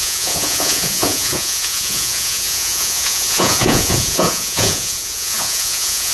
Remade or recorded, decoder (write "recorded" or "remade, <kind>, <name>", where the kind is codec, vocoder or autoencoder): remade, vocoder, Vocos